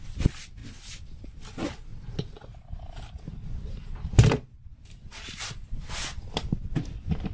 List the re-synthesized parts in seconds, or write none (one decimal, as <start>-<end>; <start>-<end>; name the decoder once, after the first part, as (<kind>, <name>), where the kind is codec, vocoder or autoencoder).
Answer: 1.9-2.7 (vocoder, Vocos)